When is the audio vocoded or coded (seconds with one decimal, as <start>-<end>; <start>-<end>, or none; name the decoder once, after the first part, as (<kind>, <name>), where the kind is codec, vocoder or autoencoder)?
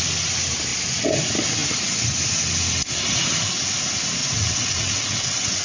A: 4.2-5.6 (vocoder, WaveNeXt)